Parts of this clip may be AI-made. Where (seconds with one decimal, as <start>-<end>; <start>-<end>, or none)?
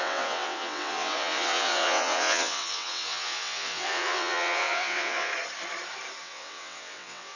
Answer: 0.0-5.3; 6.2-7.4